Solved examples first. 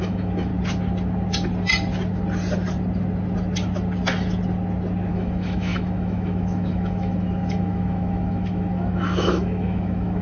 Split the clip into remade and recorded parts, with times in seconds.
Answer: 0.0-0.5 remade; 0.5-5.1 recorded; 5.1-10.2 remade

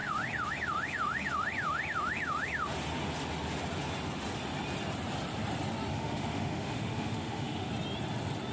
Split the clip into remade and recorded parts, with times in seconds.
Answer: 0.0-5.9 recorded; 5.9-7.7 remade; 7.7-8.5 recorded

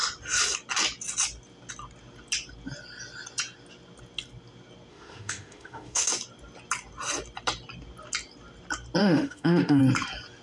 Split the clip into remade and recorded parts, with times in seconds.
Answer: 0.0-4.9 recorded; 4.9-6.1 remade; 6.1-9.0 recorded; 9.0-9.8 remade; 9.8-10.4 recorded